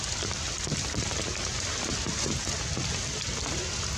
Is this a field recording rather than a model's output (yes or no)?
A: yes